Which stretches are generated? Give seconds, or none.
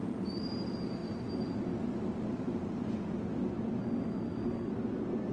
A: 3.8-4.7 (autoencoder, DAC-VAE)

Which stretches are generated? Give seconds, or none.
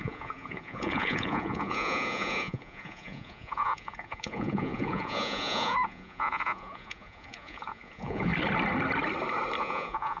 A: 0.0-8.3 (vocoder, Vocos); 9.6-10.2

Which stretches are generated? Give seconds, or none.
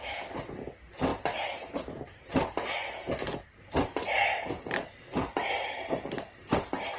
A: 1.1-2.3 (vocoder, BigVGAN v2); 3.0-6.4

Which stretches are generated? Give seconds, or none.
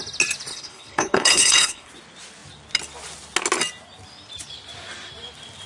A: 0.5-1.9 (codec, HILCodec)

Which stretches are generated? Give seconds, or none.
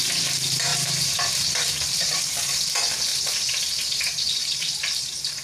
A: 0.7-2.2 (vocoder, BigVGAN v2); 3.1-4.0; 4.4-5.4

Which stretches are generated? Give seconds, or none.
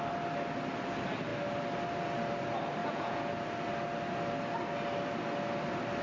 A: 2.8-3.3 (vocoder, Vocos)